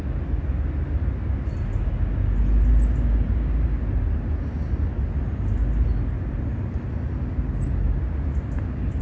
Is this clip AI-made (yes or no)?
no